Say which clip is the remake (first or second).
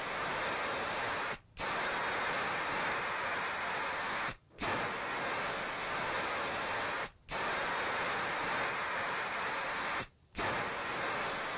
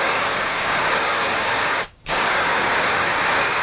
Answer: second